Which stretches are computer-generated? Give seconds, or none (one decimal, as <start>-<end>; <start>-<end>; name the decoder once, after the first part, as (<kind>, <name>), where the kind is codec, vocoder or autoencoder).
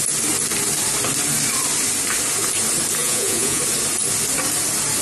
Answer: 3.0-3.6 (vocoder, Vocos)